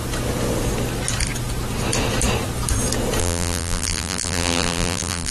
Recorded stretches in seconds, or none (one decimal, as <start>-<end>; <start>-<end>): 0.0-3.2